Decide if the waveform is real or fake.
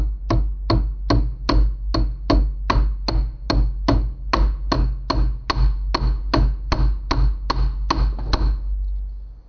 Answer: real